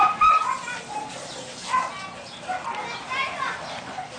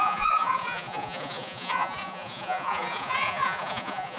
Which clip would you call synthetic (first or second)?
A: second